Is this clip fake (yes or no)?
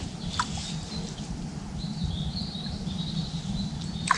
no